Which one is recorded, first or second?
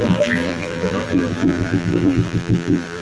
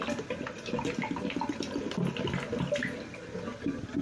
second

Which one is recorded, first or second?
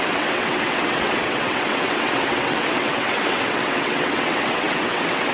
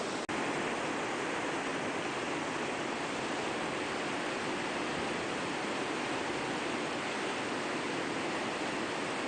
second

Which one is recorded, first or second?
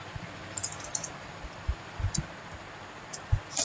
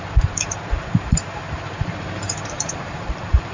first